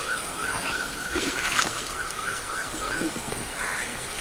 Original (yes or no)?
no